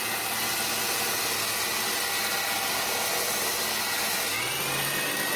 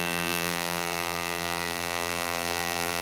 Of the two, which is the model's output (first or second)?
second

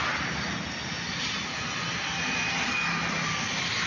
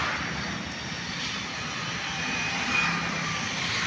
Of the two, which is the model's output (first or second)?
second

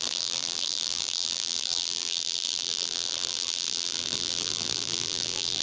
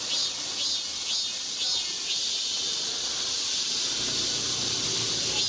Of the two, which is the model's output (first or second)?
first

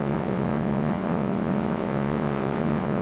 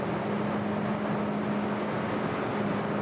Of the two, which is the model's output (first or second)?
first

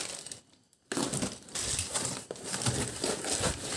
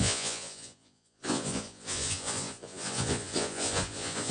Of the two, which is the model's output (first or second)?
second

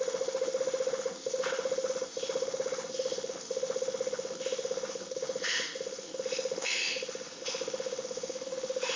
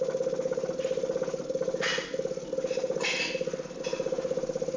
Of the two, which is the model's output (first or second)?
first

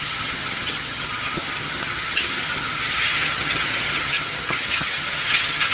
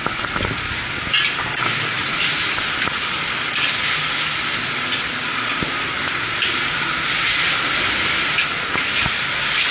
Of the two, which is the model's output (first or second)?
first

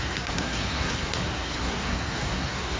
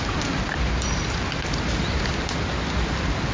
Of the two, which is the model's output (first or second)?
first